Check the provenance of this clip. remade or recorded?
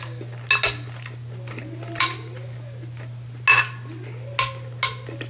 recorded